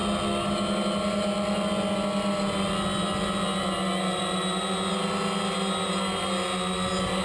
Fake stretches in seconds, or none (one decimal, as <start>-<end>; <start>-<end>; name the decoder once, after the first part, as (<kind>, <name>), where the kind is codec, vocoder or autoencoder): none

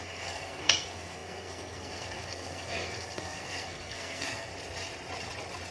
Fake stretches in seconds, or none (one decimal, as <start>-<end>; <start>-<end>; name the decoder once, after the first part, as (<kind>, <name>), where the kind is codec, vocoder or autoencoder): 0.0-4.5 (codec, SNAC)

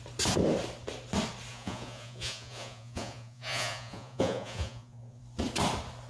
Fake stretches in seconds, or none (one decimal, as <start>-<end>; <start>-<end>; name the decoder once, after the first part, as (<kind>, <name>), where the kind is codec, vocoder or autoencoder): 1.5-5.2 (vocoder, Vocos)